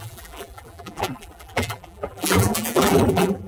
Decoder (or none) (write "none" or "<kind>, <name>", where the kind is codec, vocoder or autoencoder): vocoder, BigVGAN v2